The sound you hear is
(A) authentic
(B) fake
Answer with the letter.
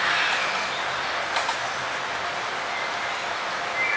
A